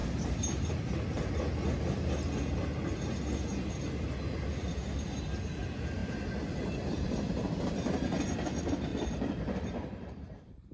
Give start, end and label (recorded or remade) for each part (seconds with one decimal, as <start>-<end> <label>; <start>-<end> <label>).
0.0-0.6 remade; 0.6-6.0 recorded; 6.0-7.5 remade; 7.5-8.9 recorded; 8.9-10.7 remade